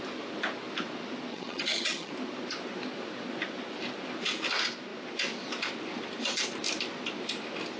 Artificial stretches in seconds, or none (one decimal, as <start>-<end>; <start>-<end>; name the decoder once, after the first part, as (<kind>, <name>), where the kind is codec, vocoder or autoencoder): 1.3-2.1 (vocoder, HiFi-GAN)